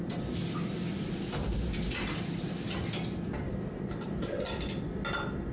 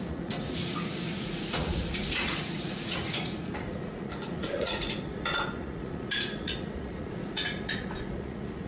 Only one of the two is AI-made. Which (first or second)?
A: second